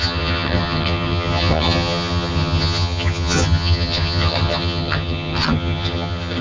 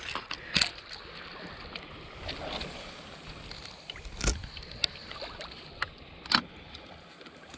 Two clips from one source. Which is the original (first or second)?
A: second